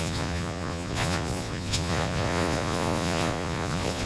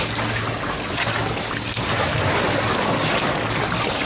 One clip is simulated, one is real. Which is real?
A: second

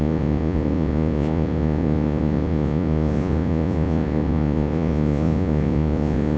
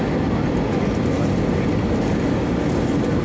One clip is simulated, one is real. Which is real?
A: second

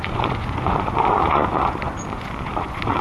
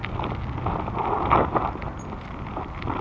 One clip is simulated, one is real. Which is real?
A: second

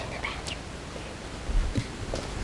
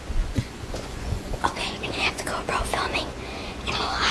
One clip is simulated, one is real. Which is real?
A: first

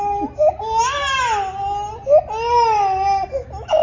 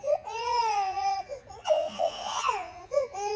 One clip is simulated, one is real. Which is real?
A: first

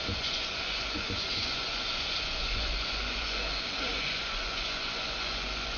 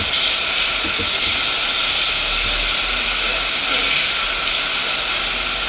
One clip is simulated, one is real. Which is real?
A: second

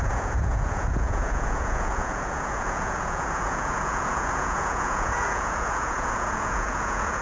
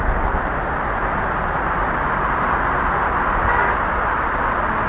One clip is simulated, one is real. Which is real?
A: second